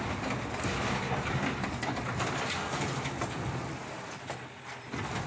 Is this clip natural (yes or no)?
yes